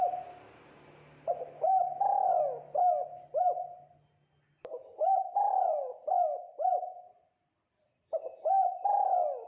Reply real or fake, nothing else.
real